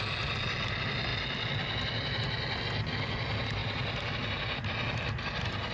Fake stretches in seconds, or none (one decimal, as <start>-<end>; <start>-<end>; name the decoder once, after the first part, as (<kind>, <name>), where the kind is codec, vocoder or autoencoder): none